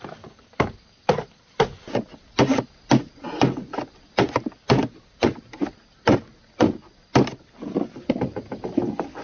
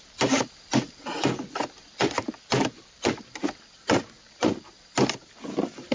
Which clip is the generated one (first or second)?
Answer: second